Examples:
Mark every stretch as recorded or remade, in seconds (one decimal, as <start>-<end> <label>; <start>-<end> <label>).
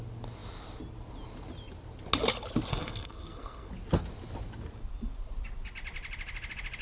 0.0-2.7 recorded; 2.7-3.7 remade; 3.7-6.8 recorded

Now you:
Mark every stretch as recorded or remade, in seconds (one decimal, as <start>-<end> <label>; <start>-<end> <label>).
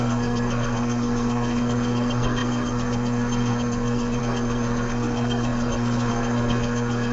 0.0-7.1 remade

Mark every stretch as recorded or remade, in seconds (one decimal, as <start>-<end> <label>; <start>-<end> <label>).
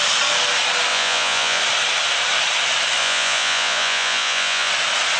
0.0-0.9 recorded; 0.9-1.6 remade; 1.6-3.0 recorded; 3.0-4.7 remade; 4.7-5.2 recorded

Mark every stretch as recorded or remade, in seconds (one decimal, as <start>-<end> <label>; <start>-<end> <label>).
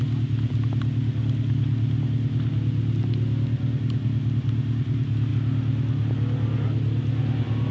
0.0-7.7 recorded